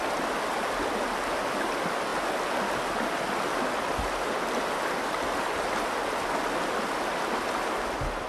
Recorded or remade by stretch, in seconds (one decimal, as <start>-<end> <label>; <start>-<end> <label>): 0.0-8.3 recorded